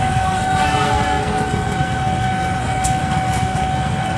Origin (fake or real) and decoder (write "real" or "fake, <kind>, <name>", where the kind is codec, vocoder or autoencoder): fake, codec, SNAC